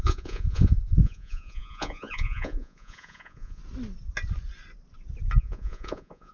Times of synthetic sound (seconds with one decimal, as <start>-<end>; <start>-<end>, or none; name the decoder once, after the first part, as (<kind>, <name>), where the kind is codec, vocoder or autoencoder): 0.0-3.6 (vocoder, Vocos); 5.4-6.3